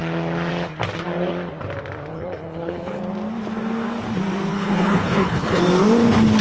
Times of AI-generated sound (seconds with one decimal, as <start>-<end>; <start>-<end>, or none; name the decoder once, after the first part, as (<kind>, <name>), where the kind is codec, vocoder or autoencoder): 2.1-3.0 (codec, HILCodec); 4.5-5.6